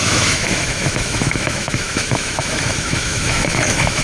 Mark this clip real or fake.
fake